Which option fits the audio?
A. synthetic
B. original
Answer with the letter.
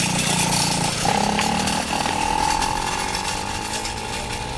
B